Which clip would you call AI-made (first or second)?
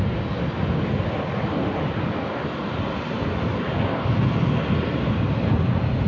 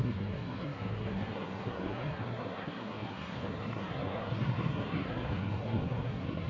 second